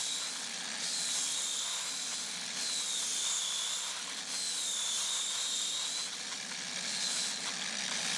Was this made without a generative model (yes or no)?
yes